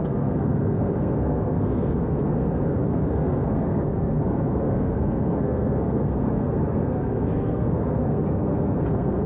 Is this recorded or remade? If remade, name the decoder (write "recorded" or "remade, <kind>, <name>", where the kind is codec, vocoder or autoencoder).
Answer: remade, codec, SNAC